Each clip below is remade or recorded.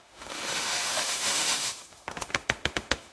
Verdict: remade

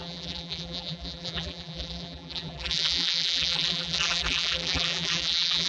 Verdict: remade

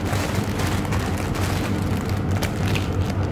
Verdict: recorded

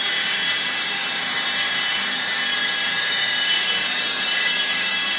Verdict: remade